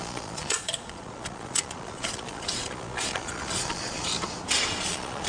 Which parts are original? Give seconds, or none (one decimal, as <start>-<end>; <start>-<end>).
4.1-4.6